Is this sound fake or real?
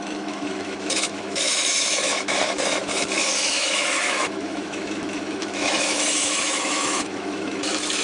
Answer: fake